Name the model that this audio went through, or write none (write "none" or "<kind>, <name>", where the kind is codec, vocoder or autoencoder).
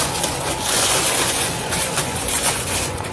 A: vocoder, Vocos